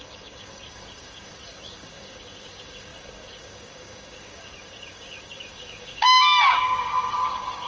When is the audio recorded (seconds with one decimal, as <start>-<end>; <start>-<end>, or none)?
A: none